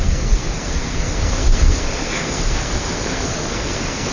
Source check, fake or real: fake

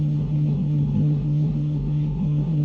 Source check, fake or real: fake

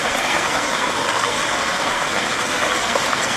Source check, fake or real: fake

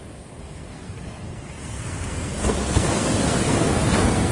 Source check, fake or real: fake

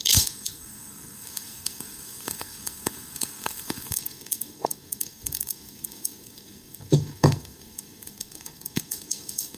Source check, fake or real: fake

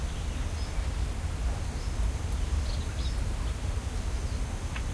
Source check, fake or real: real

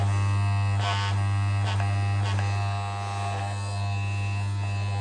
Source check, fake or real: real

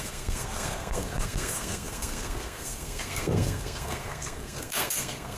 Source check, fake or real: fake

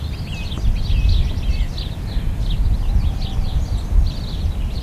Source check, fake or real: real